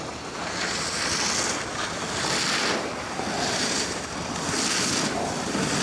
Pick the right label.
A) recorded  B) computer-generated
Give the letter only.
A